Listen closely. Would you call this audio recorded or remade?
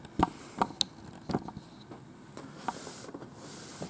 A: recorded